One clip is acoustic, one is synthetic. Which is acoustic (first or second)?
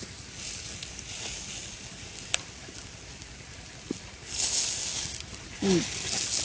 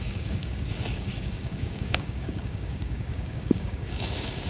first